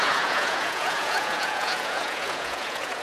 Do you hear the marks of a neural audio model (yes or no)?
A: yes